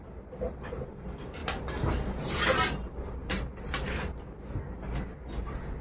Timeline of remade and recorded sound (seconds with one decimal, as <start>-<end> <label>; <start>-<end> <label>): 0.0-1.4 recorded; 1.4-2.4 remade; 2.4-3.2 recorded; 3.2-4.4 remade; 4.4-5.8 recorded